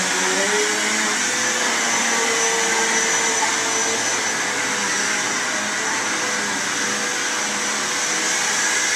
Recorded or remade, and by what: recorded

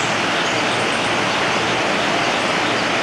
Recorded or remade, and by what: recorded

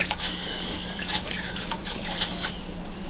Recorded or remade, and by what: remade, codec, DAC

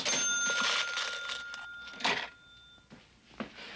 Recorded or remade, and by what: recorded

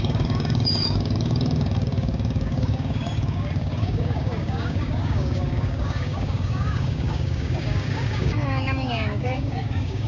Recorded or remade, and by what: remade, codec, DAC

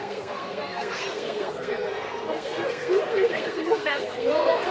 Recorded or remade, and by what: remade, codec, SNAC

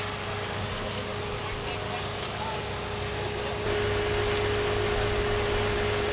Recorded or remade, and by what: recorded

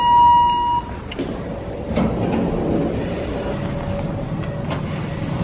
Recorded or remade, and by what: recorded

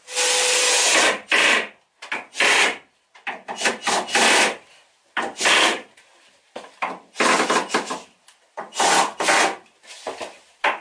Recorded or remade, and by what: recorded